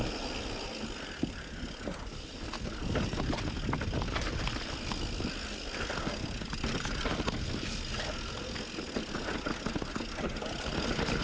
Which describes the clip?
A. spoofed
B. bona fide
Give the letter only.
B